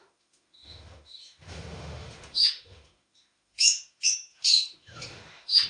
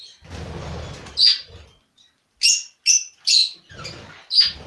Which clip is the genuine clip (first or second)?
second